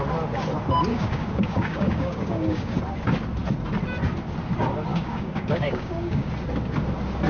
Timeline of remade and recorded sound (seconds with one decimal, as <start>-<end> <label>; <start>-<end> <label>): 0.0-0.9 recorded; 0.9-2.8 remade; 2.8-4.9 recorded; 4.9-6.3 remade; 6.3-7.3 recorded